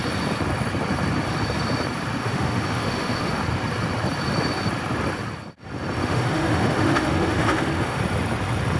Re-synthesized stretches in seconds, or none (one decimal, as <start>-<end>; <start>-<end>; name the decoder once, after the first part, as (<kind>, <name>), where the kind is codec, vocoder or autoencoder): 2.2-3.4 (autoencoder, DAC-VAE); 6.0-8.0